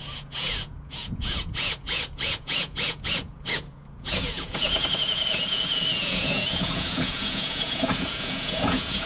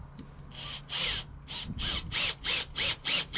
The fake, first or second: first